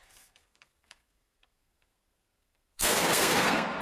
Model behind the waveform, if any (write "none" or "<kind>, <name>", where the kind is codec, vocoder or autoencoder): codec, SNAC